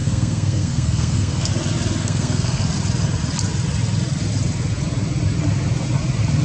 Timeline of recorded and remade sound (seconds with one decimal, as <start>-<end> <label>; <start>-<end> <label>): 0.0-1.5 remade; 1.5-2.0 recorded; 2.0-2.6 remade; 2.6-6.4 recorded

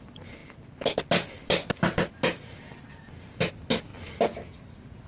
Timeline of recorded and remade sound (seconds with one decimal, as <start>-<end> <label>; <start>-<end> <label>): 0.0-5.1 recorded

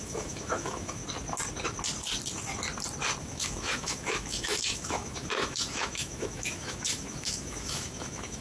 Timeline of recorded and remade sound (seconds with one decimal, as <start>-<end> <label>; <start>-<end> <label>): 0.0-1.0 remade; 1.0-3.2 recorded; 3.2-8.4 remade